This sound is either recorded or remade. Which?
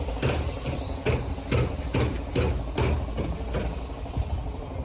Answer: recorded